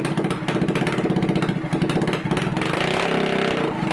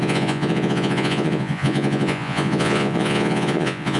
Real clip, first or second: first